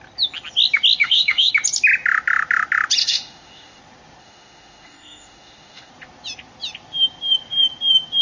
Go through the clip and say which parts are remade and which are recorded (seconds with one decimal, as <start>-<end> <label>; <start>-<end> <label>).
0.0-1.0 recorded; 1.0-1.5 remade; 1.5-3.0 recorded; 3.0-3.8 remade; 3.8-4.2 recorded; 4.2-5.9 remade; 5.9-8.2 recorded